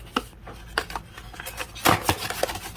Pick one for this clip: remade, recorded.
recorded